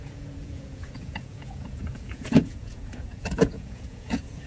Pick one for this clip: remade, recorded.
remade